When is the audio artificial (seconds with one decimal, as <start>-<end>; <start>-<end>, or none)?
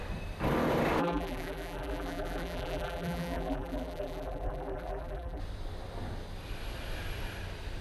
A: 1.0-5.4